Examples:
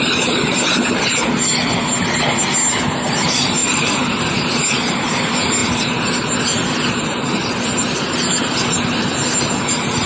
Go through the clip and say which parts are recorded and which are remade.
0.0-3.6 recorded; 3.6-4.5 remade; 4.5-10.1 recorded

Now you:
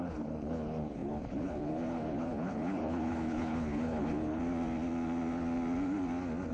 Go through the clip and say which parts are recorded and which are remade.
0.0-4.4 remade; 4.4-6.5 recorded

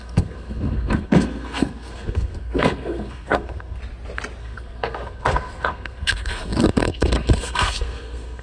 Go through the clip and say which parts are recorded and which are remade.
0.0-3.8 remade; 3.8-4.4 recorded; 4.4-8.4 remade

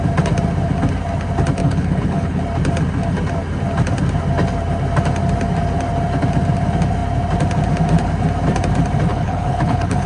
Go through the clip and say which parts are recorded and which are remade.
0.0-1.6 recorded; 1.6-2.4 remade; 2.4-9.1 recorded; 9.1-10.1 remade

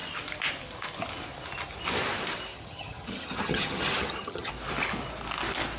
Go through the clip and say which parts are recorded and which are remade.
0.0-2.5 recorded; 2.5-4.5 remade; 4.5-5.8 recorded

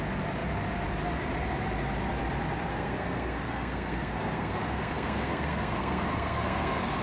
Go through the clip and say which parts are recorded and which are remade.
0.0-2.7 recorded; 2.7-7.0 remade

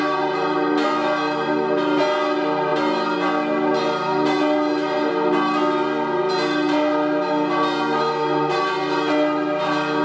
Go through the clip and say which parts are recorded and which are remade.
0.0-10.0 recorded